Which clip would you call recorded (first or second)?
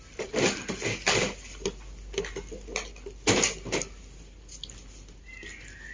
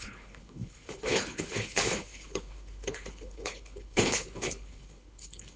first